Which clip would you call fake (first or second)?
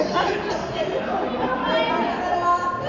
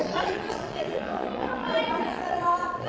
second